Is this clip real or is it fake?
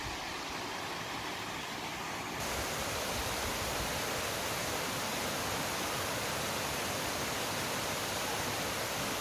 real